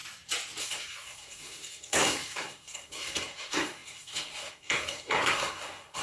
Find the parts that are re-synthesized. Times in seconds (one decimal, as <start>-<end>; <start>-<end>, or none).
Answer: 0.6-6.0